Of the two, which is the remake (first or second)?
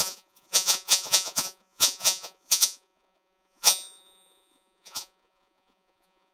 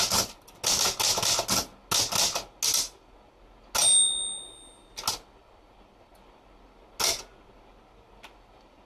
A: first